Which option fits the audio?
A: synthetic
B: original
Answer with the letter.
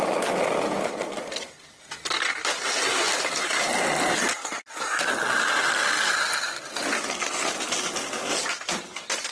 B